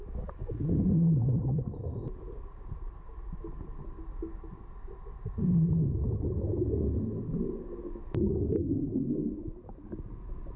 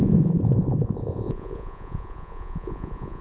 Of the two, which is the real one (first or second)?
first